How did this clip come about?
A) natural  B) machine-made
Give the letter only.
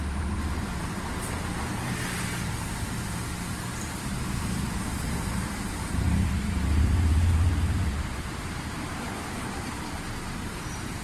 B